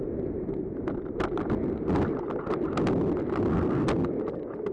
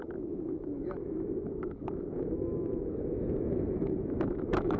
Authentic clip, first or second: first